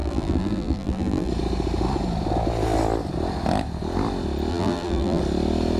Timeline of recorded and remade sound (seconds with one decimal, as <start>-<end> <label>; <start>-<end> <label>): 0.0-1.3 remade; 1.3-4.5 recorded; 4.5-5.2 remade; 5.2-5.8 recorded